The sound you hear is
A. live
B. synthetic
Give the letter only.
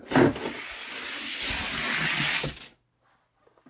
A